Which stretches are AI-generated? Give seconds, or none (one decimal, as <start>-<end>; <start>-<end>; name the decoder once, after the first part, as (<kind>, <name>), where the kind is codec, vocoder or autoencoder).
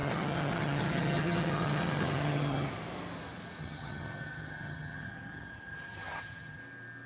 0.0-2.7 (vocoder, HiFi-GAN); 3.6-6.6